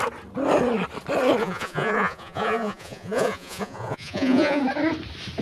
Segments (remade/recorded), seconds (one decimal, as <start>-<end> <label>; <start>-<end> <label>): 0.0-1.4 recorded; 1.4-4.6 remade; 4.6-5.4 recorded